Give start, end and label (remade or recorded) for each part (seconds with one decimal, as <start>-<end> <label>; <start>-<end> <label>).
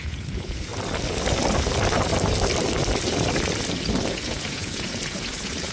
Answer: 0.0-0.7 remade; 0.7-4.1 recorded; 4.1-5.7 remade